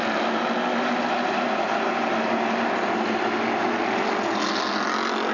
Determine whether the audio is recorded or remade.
recorded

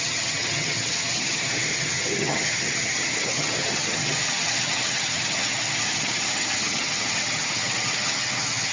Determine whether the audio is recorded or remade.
remade